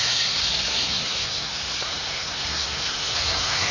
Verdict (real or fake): fake